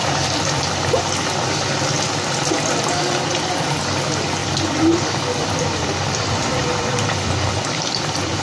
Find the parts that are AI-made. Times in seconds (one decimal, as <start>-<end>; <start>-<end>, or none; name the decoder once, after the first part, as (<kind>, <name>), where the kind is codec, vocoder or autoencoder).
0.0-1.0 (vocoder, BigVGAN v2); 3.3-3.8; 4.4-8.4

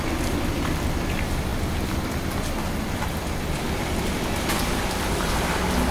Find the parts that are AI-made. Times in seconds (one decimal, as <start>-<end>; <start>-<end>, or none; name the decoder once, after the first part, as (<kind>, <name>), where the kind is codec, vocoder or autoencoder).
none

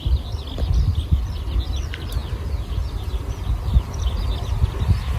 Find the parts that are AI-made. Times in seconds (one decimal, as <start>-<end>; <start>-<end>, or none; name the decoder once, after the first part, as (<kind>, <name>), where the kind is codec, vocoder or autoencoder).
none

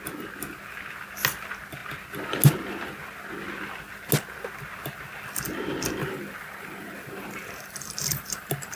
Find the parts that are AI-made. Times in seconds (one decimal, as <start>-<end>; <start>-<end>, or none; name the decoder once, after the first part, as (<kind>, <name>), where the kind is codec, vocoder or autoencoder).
6.0-8.8 (vocoder, BigVGAN v2)

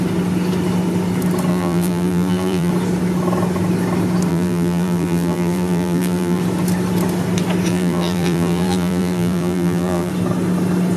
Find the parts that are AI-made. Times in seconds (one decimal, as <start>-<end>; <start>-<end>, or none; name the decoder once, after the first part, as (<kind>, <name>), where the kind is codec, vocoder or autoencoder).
1.5-2.7 (vocoder, BigVGAN v2); 4.3-6.4; 7.7-10.1

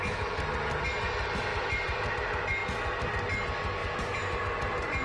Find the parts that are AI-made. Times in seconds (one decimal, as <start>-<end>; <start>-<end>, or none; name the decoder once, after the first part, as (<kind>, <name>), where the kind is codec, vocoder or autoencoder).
1.5-2.1 (vocoder, BigVGAN v2); 3.8-4.4

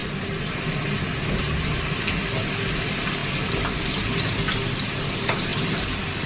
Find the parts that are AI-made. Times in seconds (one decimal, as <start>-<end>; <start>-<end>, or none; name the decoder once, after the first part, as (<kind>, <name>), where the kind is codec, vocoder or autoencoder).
none

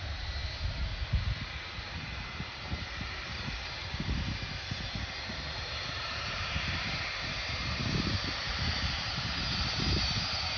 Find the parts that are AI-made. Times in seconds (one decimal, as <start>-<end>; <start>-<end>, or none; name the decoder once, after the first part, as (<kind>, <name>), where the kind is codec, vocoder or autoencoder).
0.0-0.9 (vocoder, BigVGAN v2); 5.6-10.6